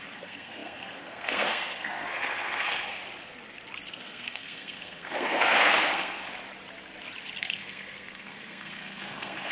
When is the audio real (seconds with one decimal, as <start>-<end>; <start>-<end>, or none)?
3.0-3.9; 6.3-7.4